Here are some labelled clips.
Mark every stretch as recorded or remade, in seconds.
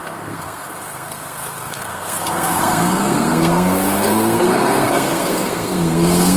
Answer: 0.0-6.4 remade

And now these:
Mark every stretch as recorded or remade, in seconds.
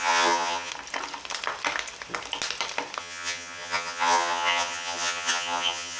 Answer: 0.0-0.7 remade; 0.7-3.0 recorded; 3.0-6.0 remade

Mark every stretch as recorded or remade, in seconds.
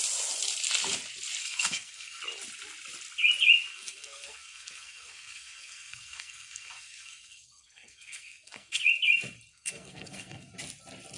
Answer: 0.0-1.4 recorded; 1.4-2.2 remade; 2.2-3.7 recorded; 3.7-8.8 remade; 8.8-9.5 recorded; 9.5-10.5 remade; 10.5-11.2 recorded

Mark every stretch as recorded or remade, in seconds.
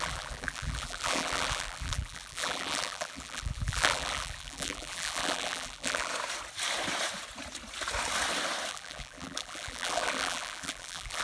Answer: 0.0-6.1 remade; 6.1-8.7 recorded; 8.7-11.2 remade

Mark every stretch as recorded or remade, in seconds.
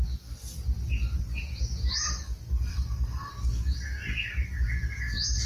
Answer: 0.0-2.7 recorded; 2.7-3.3 remade; 3.3-5.5 recorded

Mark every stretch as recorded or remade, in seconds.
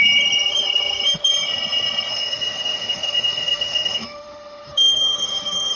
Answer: 0.0-2.1 recorded; 2.1-5.8 remade